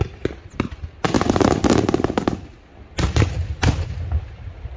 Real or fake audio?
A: real